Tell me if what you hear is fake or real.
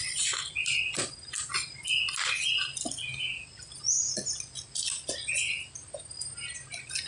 real